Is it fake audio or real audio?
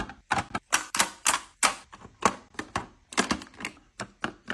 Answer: real